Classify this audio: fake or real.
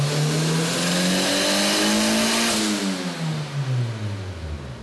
real